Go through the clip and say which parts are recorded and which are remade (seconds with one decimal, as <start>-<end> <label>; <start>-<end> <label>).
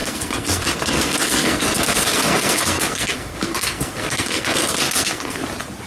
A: 0.0-5.4 remade; 5.4-5.9 recorded